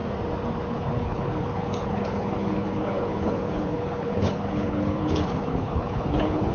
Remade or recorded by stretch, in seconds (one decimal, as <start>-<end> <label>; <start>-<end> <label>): 0.0-0.7 recorded; 0.7-6.5 remade